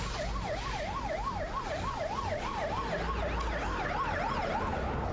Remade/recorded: recorded